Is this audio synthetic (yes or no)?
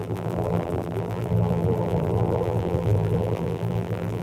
yes